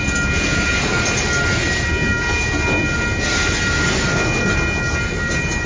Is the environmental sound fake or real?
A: real